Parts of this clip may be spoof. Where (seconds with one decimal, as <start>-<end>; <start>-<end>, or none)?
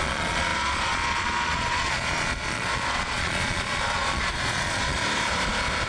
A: 0.0-5.0